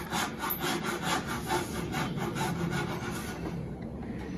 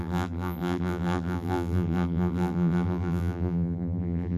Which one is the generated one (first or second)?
second